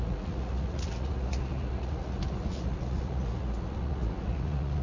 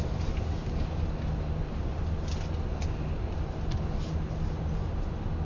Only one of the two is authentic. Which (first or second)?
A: second